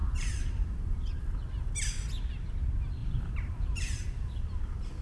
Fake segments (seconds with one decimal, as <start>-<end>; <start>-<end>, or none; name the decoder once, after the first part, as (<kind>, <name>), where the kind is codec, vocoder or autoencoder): 0.0-1.1 (vocoder, BigVGAN v2); 3.0-4.4